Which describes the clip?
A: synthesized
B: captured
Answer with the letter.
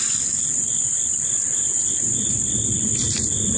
B